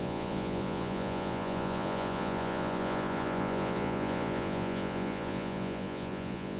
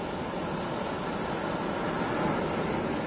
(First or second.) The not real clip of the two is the first